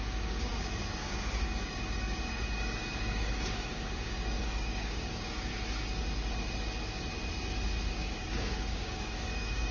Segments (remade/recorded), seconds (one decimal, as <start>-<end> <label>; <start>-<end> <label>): 0.0-5.5 remade; 5.5-7.9 recorded; 7.9-9.7 remade